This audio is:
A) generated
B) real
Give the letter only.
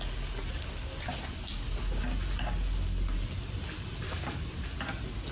B